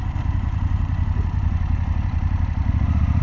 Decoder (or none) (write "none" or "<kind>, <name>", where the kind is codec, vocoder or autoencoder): vocoder, BigVGAN v2